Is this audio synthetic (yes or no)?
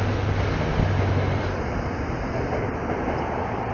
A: no